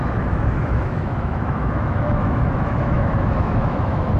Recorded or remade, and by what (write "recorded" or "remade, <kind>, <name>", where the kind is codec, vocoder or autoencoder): remade, autoencoder, DAC-VAE